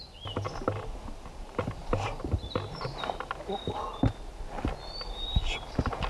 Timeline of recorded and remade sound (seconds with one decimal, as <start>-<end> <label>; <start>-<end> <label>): 0.0-1.8 recorded; 1.8-2.9 remade; 2.9-6.1 recorded